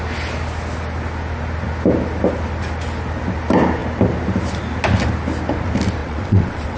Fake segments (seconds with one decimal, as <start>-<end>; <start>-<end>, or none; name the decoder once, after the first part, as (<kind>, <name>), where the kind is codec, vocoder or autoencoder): 6.0-6.8 (vocoder, WaveNeXt)